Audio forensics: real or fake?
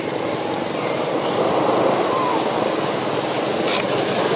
real